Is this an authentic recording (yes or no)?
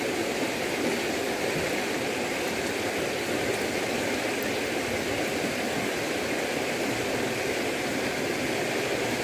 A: yes